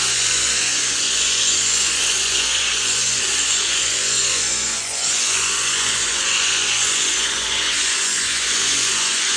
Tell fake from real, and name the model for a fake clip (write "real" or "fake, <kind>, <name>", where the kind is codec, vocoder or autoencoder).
fake, vocoder, Vocos